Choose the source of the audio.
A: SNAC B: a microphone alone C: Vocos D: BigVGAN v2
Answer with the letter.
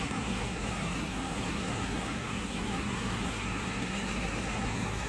A